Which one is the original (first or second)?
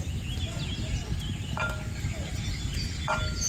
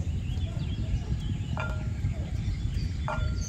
first